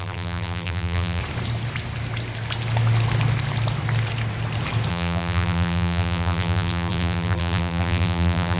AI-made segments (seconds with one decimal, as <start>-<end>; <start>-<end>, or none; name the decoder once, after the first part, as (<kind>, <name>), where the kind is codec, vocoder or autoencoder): 0.0-1.2 (vocoder, BigVGAN v2); 4.9-8.6